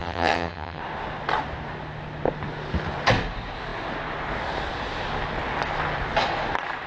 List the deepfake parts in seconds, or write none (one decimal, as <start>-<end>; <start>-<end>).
0.0-0.8